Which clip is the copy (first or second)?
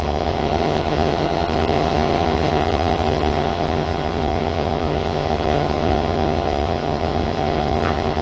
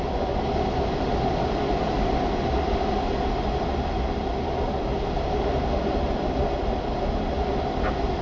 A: first